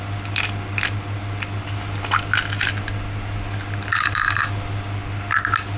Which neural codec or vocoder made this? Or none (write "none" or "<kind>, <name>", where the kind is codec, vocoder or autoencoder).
none